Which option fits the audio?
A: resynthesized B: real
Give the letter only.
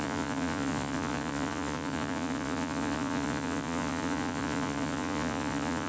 A